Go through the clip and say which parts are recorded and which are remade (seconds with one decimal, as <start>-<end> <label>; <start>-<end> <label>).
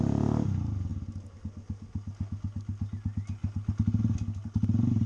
0.0-5.1 recorded